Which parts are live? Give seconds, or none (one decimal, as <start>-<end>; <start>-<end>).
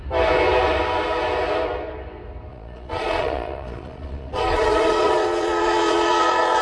0.0-2.5